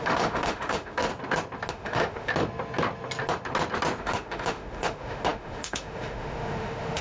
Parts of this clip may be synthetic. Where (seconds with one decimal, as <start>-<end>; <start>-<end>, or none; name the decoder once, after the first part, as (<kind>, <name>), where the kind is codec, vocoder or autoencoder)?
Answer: 0.0-1.1 (autoencoder, DAC-VAE); 1.7-2.3; 4.0-7.0